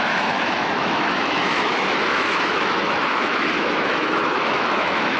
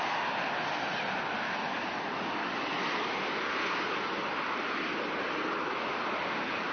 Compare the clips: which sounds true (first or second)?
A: second